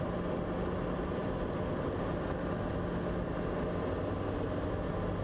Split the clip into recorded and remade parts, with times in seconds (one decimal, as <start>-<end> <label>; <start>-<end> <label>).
0.0-5.2 recorded